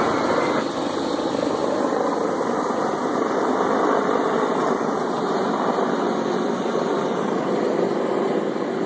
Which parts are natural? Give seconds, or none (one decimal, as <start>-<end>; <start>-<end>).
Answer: 0.0-8.9